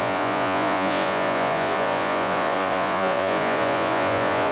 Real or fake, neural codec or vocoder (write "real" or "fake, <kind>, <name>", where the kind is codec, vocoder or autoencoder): fake, vocoder, Vocos